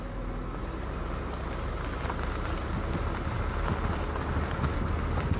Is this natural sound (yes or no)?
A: yes